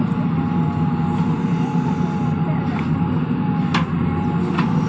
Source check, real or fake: real